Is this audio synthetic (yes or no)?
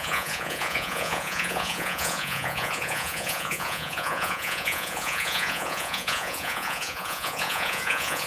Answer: yes